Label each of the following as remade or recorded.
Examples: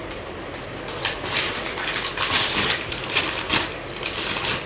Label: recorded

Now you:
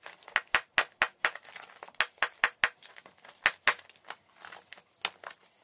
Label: recorded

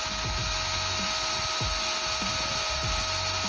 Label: recorded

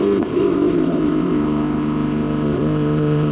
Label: remade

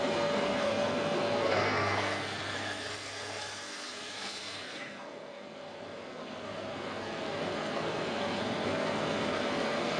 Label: remade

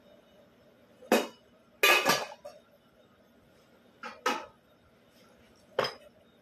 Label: recorded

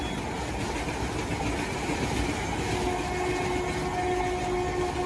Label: recorded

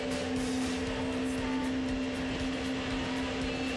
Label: recorded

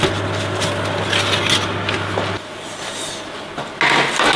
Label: recorded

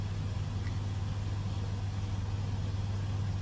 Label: recorded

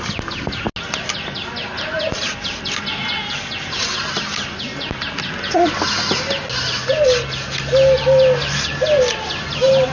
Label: recorded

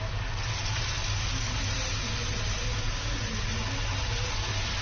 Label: recorded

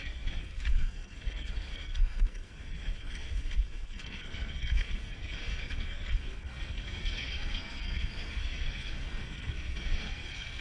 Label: remade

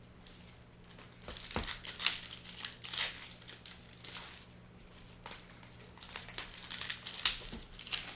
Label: recorded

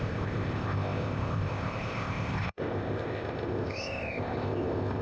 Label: remade